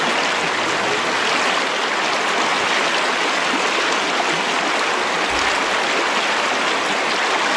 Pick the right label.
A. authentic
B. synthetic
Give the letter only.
A